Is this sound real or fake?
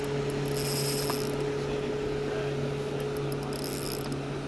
real